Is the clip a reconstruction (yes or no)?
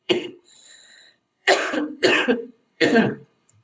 yes